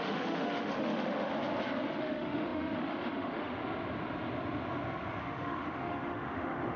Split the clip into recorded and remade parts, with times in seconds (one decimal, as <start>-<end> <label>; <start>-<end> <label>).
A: 0.0-1.3 remade; 1.3-2.0 recorded; 2.0-3.6 remade; 3.6-5.2 recorded; 5.2-6.8 remade